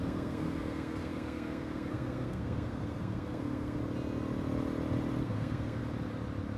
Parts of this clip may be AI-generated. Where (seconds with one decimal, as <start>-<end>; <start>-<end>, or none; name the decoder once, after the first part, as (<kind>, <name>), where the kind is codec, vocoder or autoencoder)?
0.0-3.8 (codec, SNAC); 5.2-5.8